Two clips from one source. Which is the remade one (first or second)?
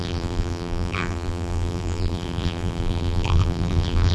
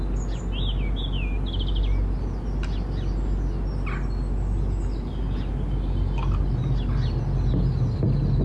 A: first